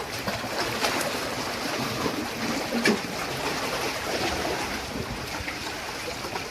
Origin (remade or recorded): recorded